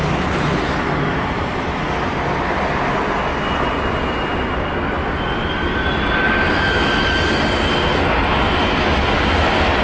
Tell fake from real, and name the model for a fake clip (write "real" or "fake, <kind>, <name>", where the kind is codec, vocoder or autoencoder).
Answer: real